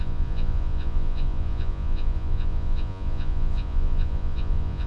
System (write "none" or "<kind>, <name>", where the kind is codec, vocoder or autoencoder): vocoder, Vocos